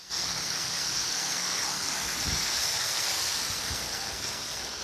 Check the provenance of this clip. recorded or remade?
remade